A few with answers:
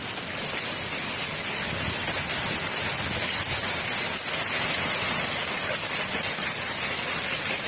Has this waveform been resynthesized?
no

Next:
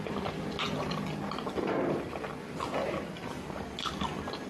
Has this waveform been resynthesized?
no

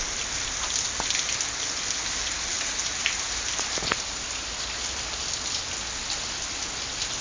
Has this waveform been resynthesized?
no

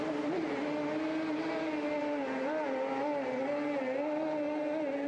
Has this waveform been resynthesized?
no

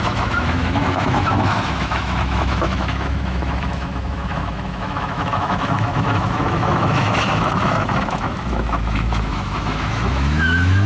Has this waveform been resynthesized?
yes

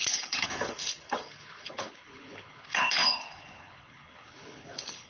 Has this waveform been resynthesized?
yes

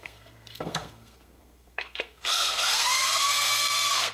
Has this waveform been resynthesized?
yes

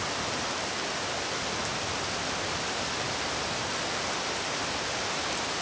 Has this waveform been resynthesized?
no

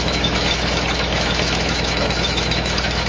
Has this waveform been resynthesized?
yes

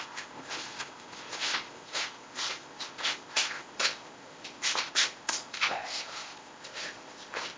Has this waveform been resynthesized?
yes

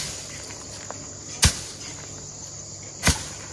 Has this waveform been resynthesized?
no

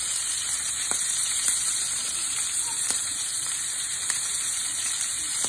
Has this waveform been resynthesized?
yes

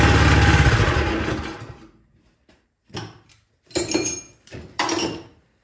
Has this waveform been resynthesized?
no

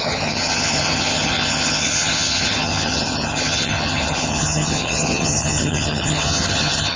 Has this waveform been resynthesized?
yes